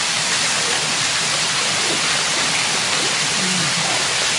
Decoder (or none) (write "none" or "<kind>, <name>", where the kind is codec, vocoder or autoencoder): none